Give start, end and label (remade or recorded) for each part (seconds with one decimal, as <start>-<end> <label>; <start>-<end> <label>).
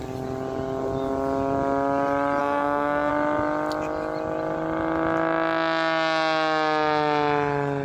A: 0.0-2.4 recorded; 2.4-3.1 remade; 3.1-7.8 recorded